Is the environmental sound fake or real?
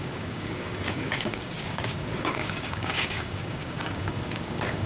fake